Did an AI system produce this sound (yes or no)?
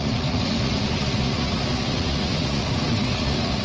yes